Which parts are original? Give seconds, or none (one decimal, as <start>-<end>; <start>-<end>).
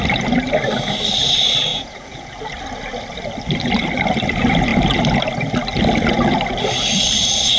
0.0-1.7; 2.3-7.6